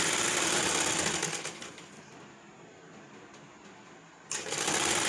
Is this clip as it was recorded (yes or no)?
yes